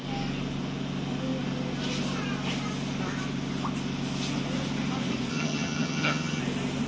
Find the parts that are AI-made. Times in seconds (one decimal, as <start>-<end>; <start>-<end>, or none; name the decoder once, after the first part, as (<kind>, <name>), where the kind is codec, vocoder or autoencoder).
5.3-6.4 (vocoder, HiFi-GAN)